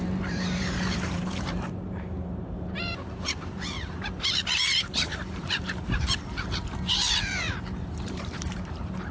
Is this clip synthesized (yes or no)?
yes